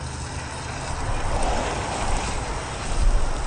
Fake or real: real